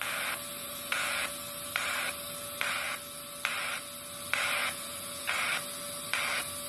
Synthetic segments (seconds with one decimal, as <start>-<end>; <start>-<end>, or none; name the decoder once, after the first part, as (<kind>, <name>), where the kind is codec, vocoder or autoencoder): 0.6-1.3 (vocoder, Vocos); 4.6-5.3